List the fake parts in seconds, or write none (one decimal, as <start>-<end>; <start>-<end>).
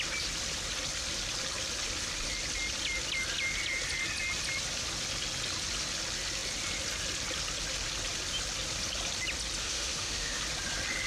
9.6-10.4